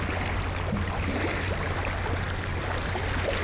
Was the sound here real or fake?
real